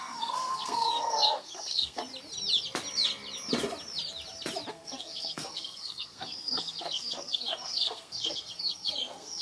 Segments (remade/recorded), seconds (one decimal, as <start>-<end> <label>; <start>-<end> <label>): 0.0-2.0 remade; 2.0-4.7 recorded; 4.7-9.4 remade